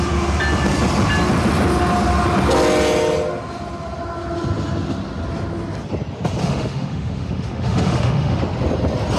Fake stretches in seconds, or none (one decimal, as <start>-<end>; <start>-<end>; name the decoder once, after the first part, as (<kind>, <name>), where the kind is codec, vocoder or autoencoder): 6.4-8.4 (autoencoder, DAC-VAE)

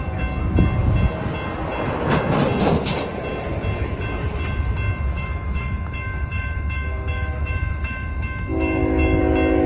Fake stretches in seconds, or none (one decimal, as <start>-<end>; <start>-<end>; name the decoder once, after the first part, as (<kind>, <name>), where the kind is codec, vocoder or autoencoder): 5.1-9.2 (autoencoder, DAC-VAE)

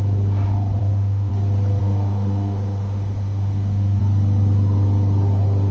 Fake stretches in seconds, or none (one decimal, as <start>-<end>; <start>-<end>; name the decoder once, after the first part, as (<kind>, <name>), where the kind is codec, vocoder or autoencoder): 0.8-1.3 (autoencoder, DAC-VAE); 1.8-4.0

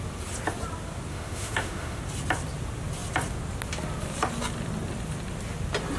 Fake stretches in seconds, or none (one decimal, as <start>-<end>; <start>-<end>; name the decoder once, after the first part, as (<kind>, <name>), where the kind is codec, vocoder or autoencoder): 1.1-2.0 (autoencoder, DAC-VAE)

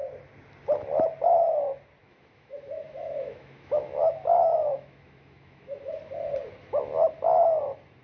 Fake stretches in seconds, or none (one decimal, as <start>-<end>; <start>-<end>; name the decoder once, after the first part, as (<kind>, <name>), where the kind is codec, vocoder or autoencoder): 2.0-5.9 (autoencoder, DAC-VAE)

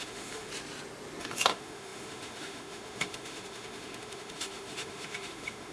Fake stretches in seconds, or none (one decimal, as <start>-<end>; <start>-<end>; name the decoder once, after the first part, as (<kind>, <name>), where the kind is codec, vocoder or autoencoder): 0.0-0.5 (autoencoder, DAC-VAE); 1.2-5.7

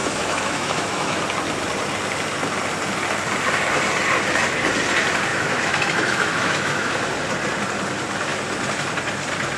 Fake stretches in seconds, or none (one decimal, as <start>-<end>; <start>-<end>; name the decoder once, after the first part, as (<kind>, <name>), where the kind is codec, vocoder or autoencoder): 0.0-1.2 (autoencoder, DAC-VAE); 5.3-6.9

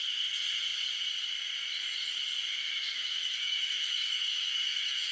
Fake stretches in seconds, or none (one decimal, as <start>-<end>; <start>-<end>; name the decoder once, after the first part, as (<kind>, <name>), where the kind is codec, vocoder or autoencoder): 2.9-5.1 (autoencoder, DAC-VAE)